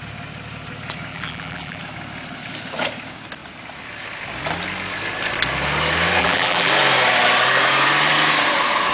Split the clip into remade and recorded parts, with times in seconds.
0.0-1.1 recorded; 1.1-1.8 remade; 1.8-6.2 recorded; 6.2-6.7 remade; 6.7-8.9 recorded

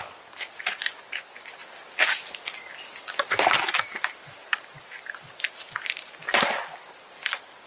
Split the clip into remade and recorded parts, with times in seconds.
0.0-7.7 recorded

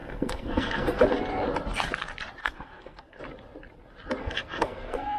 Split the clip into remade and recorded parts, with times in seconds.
0.0-1.0 remade; 1.0-2.4 recorded; 2.4-3.2 remade; 3.2-4.2 recorded; 4.2-5.2 remade